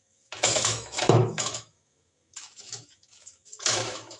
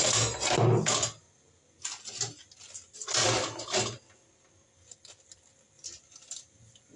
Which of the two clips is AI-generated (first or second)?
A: first